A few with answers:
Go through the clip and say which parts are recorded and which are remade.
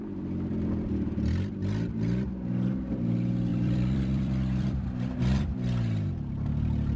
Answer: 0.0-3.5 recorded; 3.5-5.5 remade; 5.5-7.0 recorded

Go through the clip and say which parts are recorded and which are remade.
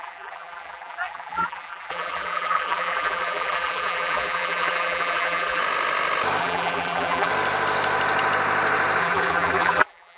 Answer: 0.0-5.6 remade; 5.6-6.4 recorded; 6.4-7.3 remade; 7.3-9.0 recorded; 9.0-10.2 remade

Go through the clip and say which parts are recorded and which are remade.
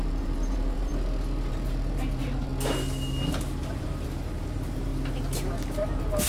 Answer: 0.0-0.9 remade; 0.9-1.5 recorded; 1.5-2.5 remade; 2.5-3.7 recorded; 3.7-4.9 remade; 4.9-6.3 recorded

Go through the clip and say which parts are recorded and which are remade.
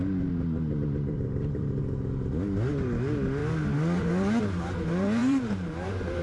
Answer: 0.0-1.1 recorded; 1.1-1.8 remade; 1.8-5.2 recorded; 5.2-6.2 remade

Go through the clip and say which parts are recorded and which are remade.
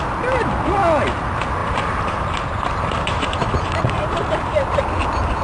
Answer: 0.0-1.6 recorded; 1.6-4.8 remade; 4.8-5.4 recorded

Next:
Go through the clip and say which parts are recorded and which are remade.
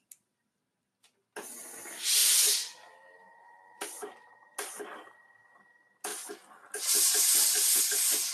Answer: 0.0-2.2 recorded; 2.2-4.3 remade; 4.3-6.1 recorded; 6.1-7.8 remade; 7.8-8.3 recorded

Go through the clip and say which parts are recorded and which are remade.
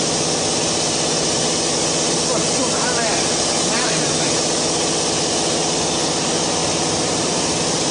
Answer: 0.0-6.6 recorded; 6.6-7.9 remade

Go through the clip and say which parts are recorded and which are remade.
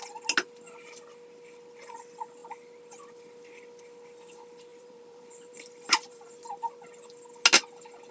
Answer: 0.0-4.7 recorded; 4.7-6.3 remade; 6.3-8.1 recorded